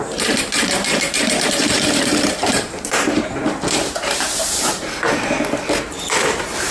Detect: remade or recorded remade